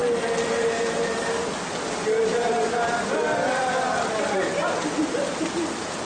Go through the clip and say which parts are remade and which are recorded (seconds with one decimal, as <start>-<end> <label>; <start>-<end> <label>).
0.0-6.0 recorded